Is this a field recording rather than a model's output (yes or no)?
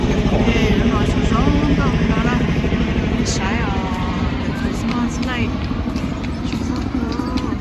no